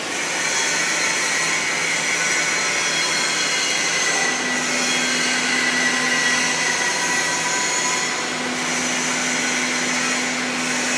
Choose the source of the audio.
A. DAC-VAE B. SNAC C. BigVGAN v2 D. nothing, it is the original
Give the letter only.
D